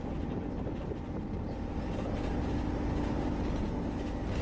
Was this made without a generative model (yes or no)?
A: yes